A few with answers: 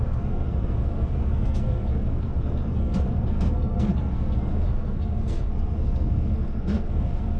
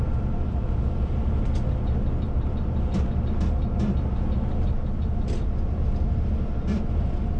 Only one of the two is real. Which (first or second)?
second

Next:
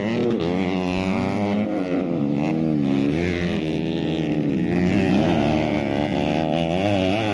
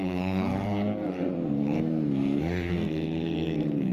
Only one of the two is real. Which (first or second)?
first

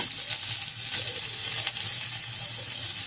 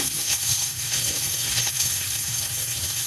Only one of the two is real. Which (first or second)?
first